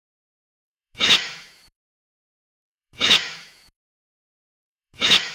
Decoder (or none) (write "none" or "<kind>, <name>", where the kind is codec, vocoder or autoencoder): autoencoder, DAC-VAE